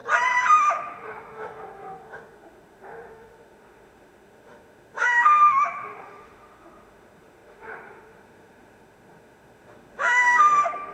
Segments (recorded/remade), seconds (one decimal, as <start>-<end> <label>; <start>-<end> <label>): 0.0-0.6 recorded; 0.6-10.9 remade